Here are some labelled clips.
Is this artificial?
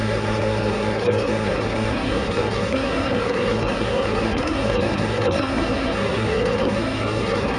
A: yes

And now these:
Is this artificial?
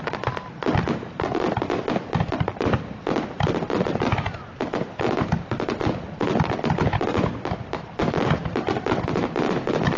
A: no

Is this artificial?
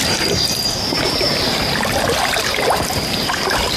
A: no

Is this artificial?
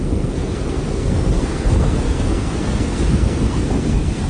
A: yes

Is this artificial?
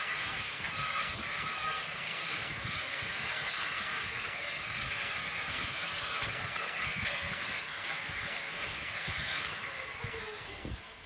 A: yes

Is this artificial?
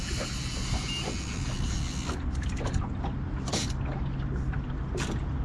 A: no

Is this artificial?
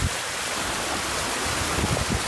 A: no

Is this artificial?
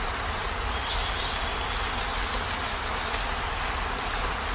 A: no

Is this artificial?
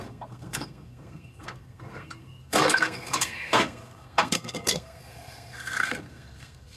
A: yes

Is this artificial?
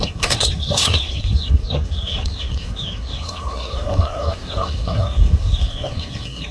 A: yes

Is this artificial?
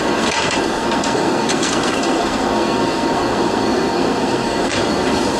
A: yes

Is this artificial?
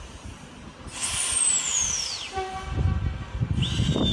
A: no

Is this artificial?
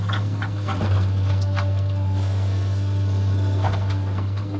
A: yes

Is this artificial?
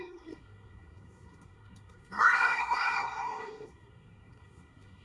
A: yes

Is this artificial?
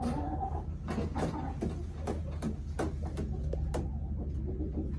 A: no